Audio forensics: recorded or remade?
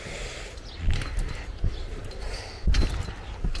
recorded